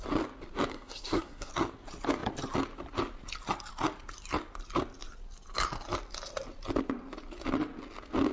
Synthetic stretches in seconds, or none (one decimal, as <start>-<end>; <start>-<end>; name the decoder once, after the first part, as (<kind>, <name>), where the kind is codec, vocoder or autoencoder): 0.7-1.5 (codec, SNAC)